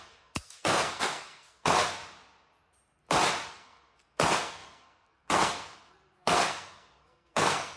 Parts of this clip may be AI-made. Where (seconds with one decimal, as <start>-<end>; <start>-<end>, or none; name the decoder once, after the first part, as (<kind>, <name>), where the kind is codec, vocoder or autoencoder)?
0.0-2.0 (codec, SNAC); 3.5-7.8